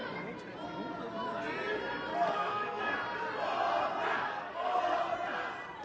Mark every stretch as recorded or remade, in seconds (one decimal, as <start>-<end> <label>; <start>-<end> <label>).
0.0-2.1 recorded; 2.1-2.8 remade; 2.8-4.3 recorded; 4.3-5.0 remade; 5.0-5.8 recorded